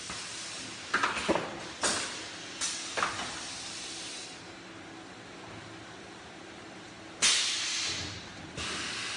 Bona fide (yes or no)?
yes